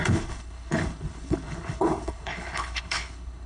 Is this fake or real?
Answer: fake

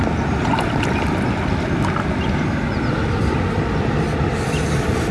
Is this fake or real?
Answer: real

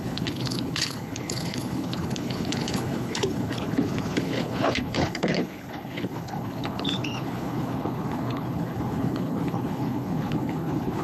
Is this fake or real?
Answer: fake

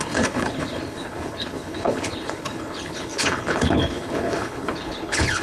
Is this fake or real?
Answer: fake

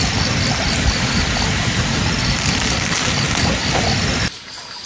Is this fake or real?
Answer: real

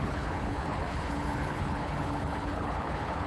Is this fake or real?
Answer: fake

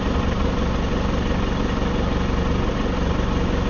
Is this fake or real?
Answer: real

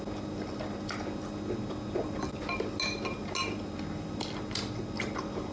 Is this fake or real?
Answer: real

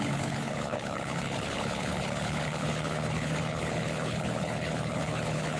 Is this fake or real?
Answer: fake